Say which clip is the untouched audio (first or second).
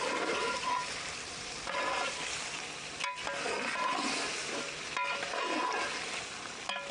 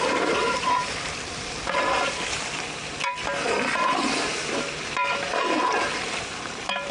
first